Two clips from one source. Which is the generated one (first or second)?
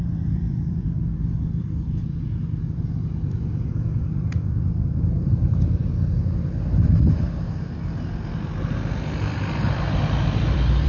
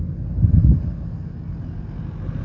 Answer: first